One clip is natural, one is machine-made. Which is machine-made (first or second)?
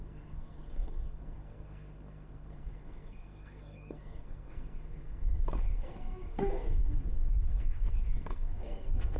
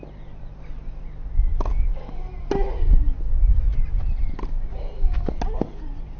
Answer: first